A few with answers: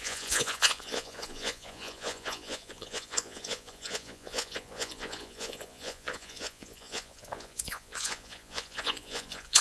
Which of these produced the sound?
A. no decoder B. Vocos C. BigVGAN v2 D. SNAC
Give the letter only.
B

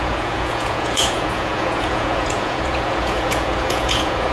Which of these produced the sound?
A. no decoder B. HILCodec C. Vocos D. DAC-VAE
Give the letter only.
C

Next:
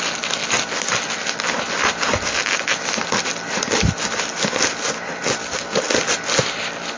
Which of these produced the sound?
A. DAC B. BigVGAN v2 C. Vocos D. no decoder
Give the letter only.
D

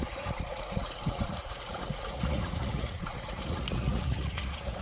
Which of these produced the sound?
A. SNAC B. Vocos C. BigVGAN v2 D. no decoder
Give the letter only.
B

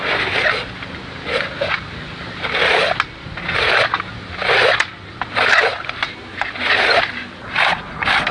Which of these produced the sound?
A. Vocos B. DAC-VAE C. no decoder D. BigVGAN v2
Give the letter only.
C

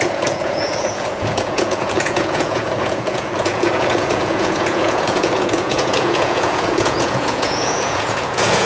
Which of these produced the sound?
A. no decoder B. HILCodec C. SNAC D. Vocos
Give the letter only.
D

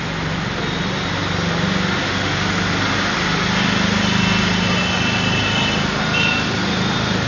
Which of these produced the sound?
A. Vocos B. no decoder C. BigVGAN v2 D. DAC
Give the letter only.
B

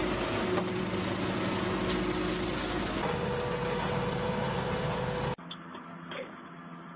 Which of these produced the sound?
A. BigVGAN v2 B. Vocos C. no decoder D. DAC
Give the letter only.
C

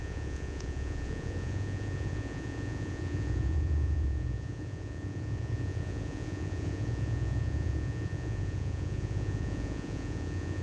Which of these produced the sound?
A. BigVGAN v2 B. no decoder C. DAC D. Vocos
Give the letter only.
D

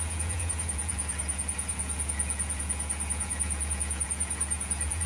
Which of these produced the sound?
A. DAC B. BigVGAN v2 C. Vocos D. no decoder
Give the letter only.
C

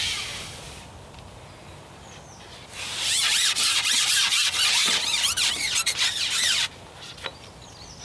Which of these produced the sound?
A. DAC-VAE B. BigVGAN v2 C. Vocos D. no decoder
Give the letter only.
D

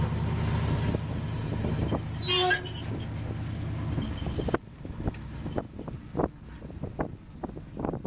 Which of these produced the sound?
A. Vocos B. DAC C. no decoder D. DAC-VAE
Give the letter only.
C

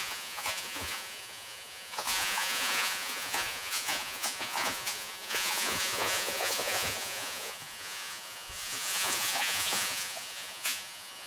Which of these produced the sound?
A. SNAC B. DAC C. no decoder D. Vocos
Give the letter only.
D